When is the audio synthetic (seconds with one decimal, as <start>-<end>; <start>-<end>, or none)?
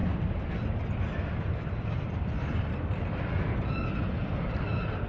none